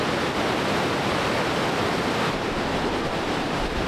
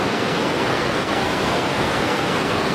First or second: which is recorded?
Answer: first